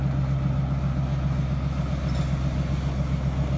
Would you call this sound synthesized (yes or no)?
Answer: no